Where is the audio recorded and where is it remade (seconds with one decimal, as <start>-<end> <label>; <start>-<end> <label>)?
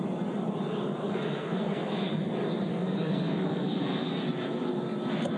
0.0-1.0 recorded; 1.0-2.3 remade; 2.3-2.7 recorded; 2.7-4.1 remade; 4.1-5.4 recorded